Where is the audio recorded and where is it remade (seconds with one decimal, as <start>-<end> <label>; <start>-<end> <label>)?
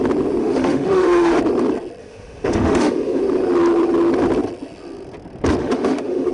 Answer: 0.0-0.4 recorded; 0.4-1.4 remade; 1.4-2.0 recorded; 2.0-3.2 remade; 3.2-5.6 recorded; 5.6-6.3 remade